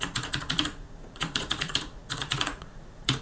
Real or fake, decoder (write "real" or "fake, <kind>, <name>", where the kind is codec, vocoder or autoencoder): fake, vocoder, Vocos